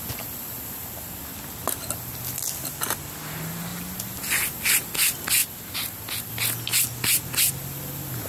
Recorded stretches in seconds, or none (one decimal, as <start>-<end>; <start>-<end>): 0.0-6.7; 7.5-8.3